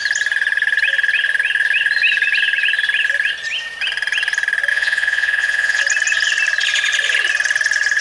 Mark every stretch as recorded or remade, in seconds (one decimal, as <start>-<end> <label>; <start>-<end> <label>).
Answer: 0.0-4.7 recorded; 4.7-5.8 remade; 5.8-8.0 recorded